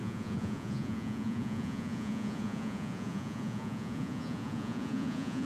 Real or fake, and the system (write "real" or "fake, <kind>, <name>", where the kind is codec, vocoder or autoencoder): fake, vocoder, Vocos